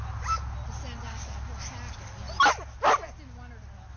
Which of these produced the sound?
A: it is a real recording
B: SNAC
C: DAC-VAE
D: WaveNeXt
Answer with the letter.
A